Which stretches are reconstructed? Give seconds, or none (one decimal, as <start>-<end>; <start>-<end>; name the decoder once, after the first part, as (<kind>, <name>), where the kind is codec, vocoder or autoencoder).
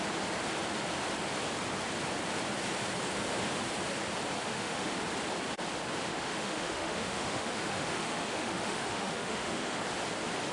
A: 4.5-5.0 (autoencoder, DAC-VAE); 6.1-9.8